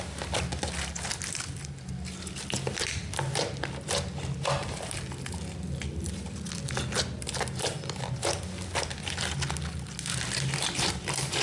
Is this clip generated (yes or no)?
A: no